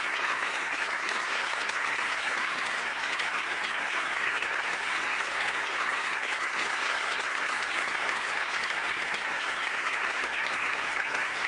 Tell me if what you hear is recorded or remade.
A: remade